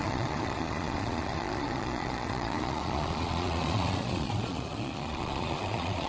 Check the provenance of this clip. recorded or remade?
remade